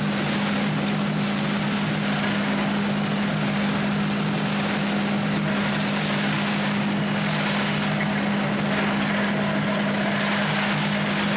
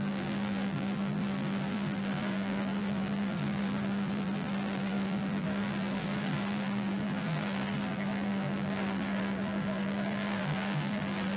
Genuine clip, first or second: first